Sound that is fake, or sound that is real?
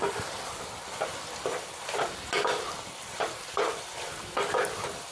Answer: fake